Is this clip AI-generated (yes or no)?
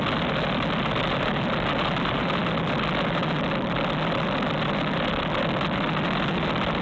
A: no